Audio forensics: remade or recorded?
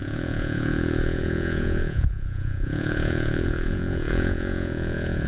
remade